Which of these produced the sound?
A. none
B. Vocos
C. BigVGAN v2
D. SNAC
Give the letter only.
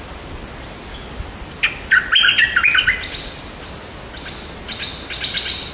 A